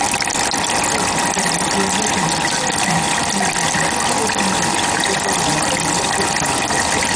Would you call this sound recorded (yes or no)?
yes